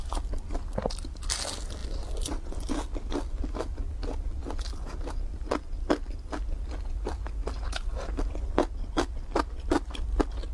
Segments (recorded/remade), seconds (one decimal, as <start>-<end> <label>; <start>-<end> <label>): 0.0-10.5 recorded